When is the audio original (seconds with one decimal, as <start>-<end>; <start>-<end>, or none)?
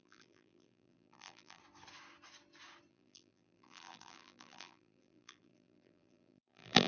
1.6-2.9